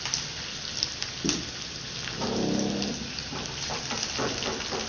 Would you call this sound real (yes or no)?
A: yes